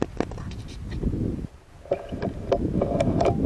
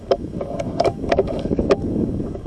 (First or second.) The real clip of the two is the first